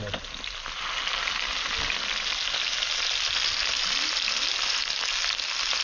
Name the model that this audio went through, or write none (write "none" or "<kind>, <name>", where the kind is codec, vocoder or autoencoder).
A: none